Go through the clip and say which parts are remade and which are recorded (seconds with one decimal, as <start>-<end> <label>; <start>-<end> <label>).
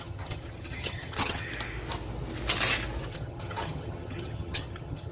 0.0-1.5 remade; 1.5-3.1 recorded; 3.1-5.1 remade